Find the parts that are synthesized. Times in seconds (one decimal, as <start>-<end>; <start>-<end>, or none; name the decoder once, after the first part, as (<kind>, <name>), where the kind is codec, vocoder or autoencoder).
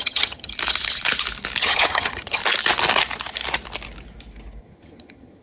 0.0-0.5 (vocoder, HiFi-GAN); 1.6-2.4; 4.6-5.4